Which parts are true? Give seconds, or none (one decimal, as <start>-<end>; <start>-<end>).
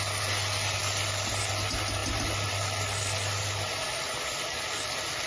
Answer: 0.0-5.3